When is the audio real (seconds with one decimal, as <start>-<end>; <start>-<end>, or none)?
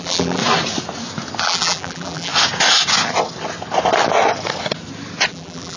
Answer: 0.4-1.4; 2.3-5.3